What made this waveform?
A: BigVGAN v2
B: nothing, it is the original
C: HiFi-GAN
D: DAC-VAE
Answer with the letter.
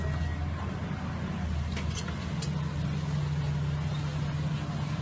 B